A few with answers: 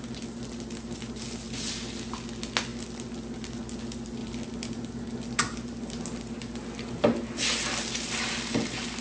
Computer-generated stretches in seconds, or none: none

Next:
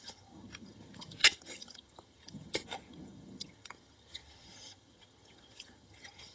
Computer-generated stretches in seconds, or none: 0.0-6.3 (vocoder, HiFi-GAN)